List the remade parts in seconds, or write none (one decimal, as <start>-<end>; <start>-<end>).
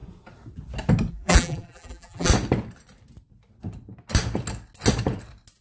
1.1-2.3